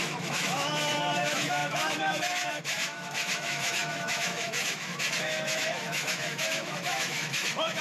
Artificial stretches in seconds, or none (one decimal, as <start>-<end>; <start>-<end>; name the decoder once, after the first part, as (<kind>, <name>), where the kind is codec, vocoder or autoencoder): 0.0-7.8 (autoencoder, DAC-VAE)